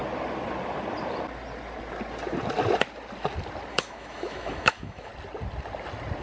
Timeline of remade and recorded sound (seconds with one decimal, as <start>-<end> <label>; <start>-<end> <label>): 0.0-3.7 recorded; 3.7-5.1 remade; 5.1-6.2 recorded